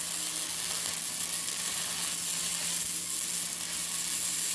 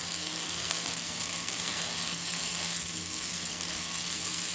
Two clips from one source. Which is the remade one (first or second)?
second